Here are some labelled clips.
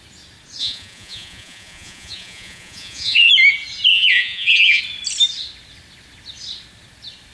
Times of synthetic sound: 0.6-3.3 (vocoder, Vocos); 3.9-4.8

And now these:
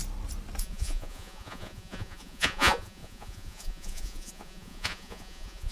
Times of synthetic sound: 0.6-5.7 (vocoder, Vocos)

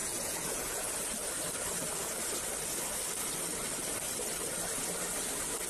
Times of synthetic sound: 0.0-0.9 (vocoder, Vocos)

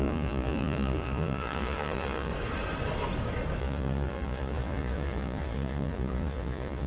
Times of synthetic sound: 0.0-2.3 (vocoder, Vocos); 3.6-6.9

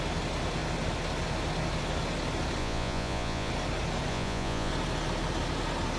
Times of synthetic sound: 2.6-3.5 (vocoder, Vocos); 4.1-4.7

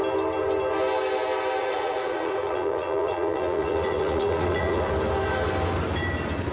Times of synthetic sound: 1.6-4.9 (vocoder, Vocos)

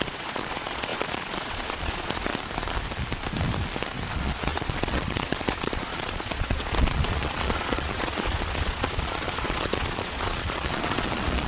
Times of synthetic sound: 0.0-2.3 (vocoder, Vocos); 4.1-11.5